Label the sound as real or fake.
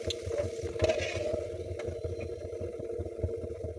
real